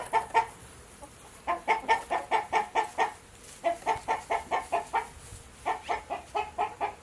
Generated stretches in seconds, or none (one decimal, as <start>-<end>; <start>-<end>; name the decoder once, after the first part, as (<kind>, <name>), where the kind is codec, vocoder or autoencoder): none